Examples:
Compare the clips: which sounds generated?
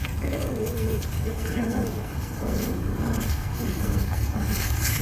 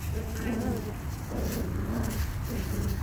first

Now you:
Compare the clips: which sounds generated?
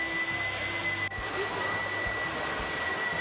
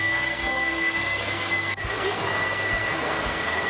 second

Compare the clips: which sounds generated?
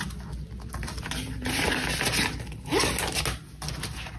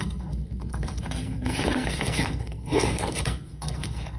second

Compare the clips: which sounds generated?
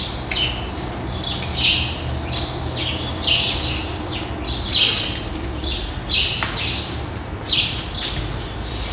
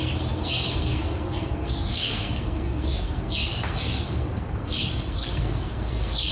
second